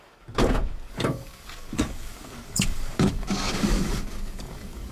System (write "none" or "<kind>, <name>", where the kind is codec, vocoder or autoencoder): codec, DAC